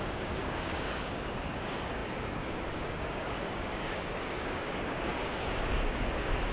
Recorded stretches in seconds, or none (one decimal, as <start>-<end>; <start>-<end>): none